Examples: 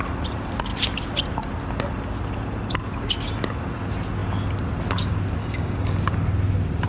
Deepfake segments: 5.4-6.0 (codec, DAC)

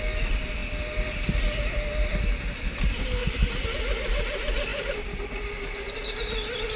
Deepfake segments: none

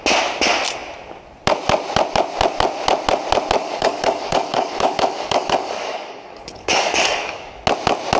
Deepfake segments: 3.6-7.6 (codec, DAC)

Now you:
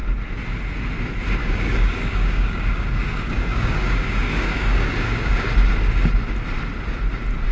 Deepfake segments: 1.4-5.5 (codec, DAC)

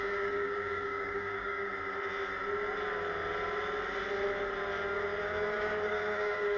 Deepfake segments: 0.0-1.7 (codec, DAC); 5.2-6.6